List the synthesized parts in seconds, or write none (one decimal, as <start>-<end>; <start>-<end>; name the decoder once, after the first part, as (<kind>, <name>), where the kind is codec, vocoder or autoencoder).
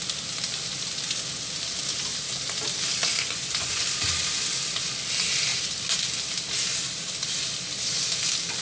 3.1-3.8 (vocoder, Vocos)